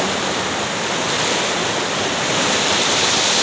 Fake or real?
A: real